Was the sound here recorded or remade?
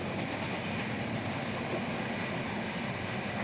recorded